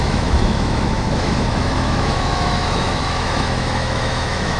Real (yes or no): no